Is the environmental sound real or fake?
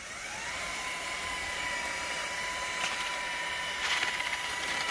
fake